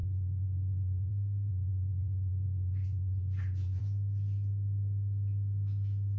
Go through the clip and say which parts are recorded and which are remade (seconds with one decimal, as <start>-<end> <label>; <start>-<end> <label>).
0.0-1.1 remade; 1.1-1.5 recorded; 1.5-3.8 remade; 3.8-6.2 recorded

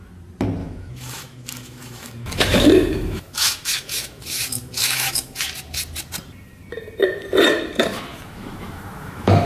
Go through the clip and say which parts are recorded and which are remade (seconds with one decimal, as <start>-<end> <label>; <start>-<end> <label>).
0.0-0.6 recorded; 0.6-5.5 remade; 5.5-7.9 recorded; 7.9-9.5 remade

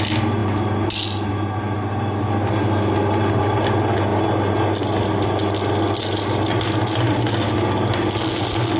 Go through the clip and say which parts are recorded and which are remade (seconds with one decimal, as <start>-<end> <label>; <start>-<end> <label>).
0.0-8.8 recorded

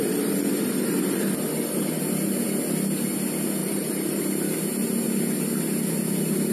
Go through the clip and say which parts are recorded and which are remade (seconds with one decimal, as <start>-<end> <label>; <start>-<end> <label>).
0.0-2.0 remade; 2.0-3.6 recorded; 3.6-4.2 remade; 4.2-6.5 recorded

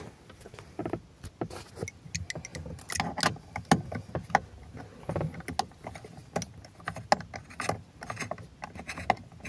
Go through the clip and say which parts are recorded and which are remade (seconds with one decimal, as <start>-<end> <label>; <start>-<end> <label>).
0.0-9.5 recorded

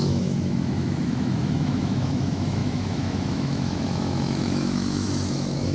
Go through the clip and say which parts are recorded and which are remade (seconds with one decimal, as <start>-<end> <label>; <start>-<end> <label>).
0.0-5.7 remade

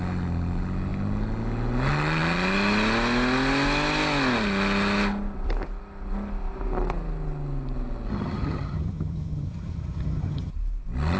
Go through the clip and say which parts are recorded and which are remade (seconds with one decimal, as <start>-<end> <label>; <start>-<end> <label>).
0.0-8.1 recorded; 8.1-10.5 remade; 10.5-11.2 recorded